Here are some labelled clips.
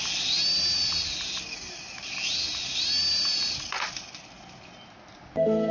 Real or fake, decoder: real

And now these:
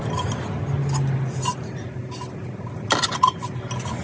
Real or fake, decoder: real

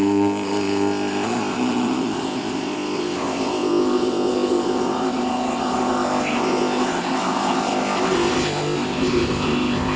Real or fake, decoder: fake, codec, ZipCodec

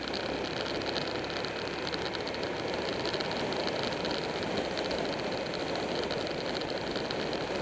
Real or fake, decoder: real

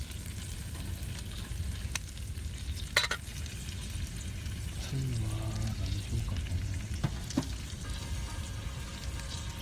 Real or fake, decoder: real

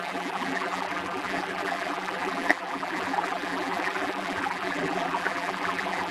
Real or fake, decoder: fake, vocoder, BigVGAN v2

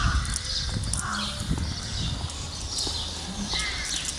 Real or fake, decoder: real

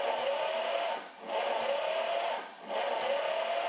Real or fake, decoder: real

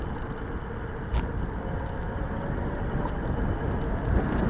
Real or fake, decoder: real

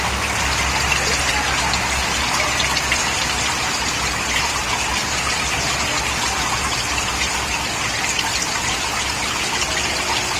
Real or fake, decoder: real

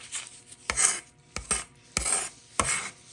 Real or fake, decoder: real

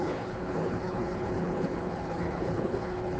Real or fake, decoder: fake, codec, HILCodec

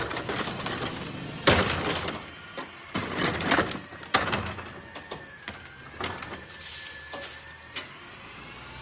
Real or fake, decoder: real